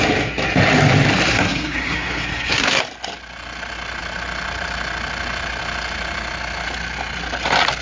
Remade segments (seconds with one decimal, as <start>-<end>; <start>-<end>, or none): 1.3-2.8